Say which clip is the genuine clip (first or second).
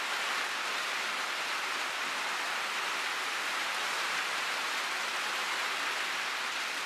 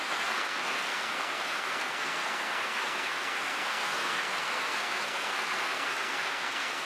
first